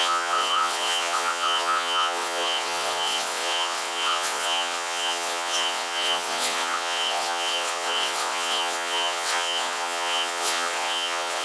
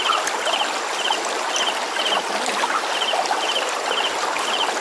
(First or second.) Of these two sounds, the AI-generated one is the first